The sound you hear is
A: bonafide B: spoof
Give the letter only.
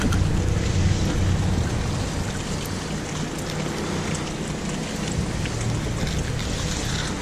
A